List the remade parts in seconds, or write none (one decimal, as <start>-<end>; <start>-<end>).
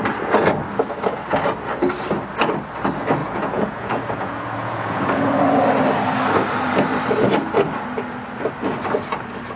3.2-5.3